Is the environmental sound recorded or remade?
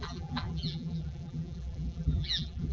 remade